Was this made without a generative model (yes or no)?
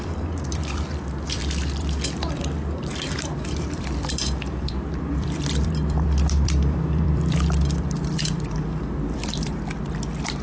no